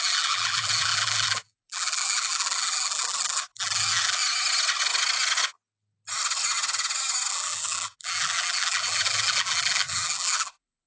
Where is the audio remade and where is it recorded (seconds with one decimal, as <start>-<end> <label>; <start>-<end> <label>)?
0.0-4.2 remade; 4.2-7.3 recorded; 7.3-10.9 remade

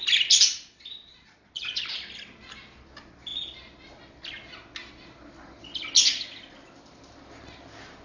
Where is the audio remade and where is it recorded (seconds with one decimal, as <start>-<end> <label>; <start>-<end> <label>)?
0.0-1.1 recorded; 1.1-1.8 remade; 1.8-8.0 recorded

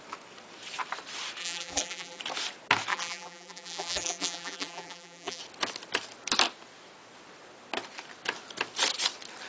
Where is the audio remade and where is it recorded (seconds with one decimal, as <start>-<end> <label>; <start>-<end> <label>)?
0.0-1.4 recorded; 1.4-2.2 remade; 2.2-2.9 recorded; 2.9-5.4 remade; 5.4-9.5 recorded

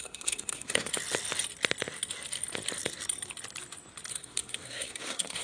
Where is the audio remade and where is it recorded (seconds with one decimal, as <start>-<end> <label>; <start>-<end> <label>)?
0.0-0.9 remade; 0.9-4.1 recorded; 4.1-5.4 remade

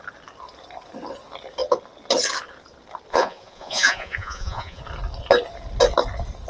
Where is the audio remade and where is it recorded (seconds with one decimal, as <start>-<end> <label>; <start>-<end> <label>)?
0.0-3.1 recorded; 3.1-4.8 remade; 4.8-6.5 recorded

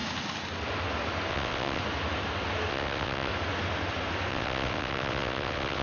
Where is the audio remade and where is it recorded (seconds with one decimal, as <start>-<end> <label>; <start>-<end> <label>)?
0.0-1.3 recorded; 1.3-1.8 remade; 1.8-2.7 recorded; 2.7-3.3 remade; 3.3-4.3 recorded; 4.3-5.8 remade

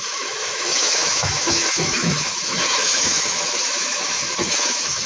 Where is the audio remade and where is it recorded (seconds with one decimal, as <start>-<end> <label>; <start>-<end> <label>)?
0.0-5.1 remade